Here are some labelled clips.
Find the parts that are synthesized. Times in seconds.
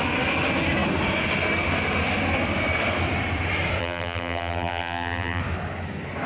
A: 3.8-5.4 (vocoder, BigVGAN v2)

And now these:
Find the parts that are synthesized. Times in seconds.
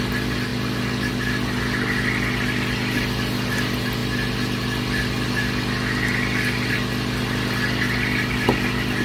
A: none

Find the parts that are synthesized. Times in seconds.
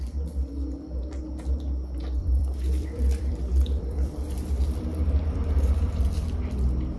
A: 2.2-6.0 (vocoder, BigVGAN v2)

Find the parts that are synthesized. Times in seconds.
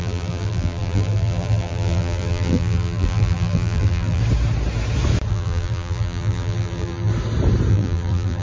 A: 0.0-4.2 (vocoder, BigVGAN v2); 5.3-7.1; 7.7-8.4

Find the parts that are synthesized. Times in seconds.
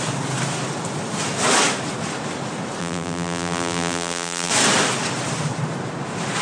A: 2.8-4.5 (vocoder, BigVGAN v2)